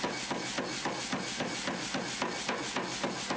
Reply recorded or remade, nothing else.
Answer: recorded